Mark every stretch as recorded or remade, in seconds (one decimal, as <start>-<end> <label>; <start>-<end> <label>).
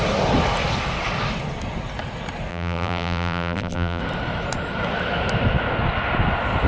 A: 0.0-2.5 recorded; 2.5-4.0 remade; 4.0-6.7 recorded